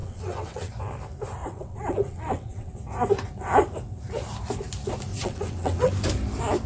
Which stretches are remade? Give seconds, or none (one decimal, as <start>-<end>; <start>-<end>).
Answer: 0.0-0.7; 1.4-2.7; 5.1-5.9